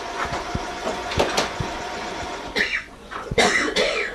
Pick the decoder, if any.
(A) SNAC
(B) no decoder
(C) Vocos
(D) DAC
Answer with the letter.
C